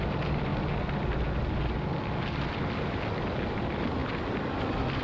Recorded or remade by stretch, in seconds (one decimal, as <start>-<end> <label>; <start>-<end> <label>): 0.0-5.0 recorded